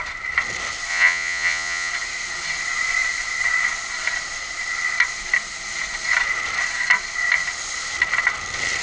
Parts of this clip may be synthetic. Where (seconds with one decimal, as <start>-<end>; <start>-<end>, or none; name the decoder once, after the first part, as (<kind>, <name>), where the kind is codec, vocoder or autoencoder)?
0.9-1.9 (vocoder, Vocos)